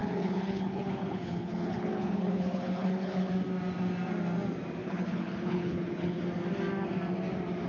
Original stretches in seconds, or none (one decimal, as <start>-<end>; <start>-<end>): 3.3-4.8; 6.2-7.7